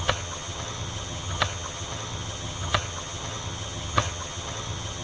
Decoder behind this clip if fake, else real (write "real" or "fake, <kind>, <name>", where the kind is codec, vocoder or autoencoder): fake, vocoder, HiFi-GAN